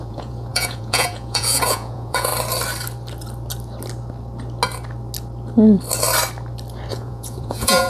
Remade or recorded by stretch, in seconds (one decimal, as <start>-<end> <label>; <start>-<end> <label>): 0.0-2.3 remade; 2.3-6.9 recorded; 6.9-7.9 remade